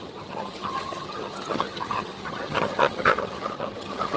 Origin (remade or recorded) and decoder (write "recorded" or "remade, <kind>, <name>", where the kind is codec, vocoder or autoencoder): remade, vocoder, HiFi-GAN